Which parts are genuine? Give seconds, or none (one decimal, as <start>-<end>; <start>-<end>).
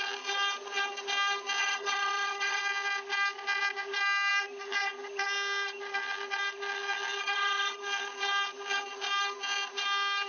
0.0-1.6; 2.6-7.2; 7.8-10.3